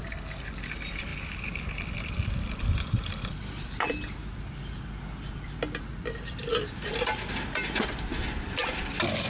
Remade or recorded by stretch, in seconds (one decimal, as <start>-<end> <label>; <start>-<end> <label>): 0.0-1.1 recorded; 1.1-4.5 remade; 4.5-5.9 recorded; 5.9-6.4 remade; 6.4-9.3 recorded